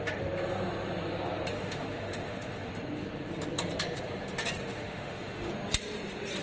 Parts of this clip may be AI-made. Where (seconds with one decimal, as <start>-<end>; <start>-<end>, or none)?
1.5-2.7; 4.7-5.5